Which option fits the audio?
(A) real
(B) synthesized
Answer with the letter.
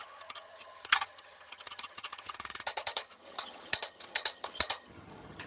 B